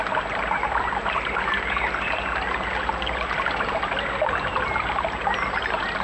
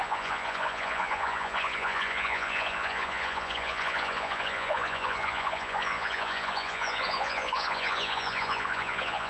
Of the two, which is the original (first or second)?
first